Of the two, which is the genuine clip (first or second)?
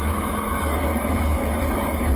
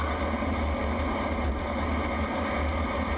second